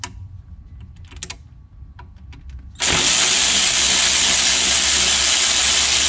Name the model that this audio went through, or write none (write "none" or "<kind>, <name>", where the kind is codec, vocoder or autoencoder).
none